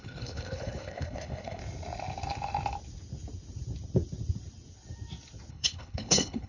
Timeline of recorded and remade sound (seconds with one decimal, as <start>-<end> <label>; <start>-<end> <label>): 0.0-1.6 remade; 1.6-5.5 recorded; 5.5-6.5 remade